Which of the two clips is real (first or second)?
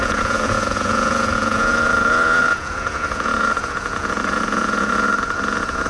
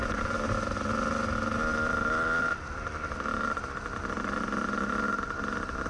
second